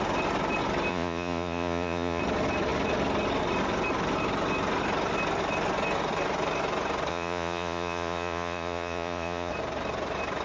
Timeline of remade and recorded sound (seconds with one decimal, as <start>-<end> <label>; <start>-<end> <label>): 0.0-0.9 recorded; 0.9-2.2 remade; 2.2-7.1 recorded; 7.1-9.5 remade; 9.5-10.4 recorded